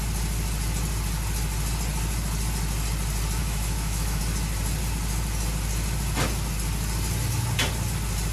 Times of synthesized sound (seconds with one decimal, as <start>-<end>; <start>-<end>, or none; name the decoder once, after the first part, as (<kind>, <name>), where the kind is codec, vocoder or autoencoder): 3.4-4.2 (autoencoder, DAC-VAE)